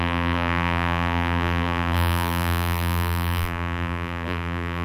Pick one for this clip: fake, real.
fake